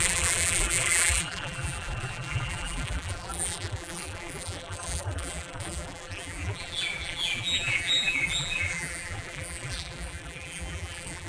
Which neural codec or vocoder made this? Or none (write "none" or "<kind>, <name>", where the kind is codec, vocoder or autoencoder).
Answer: vocoder, BigVGAN v2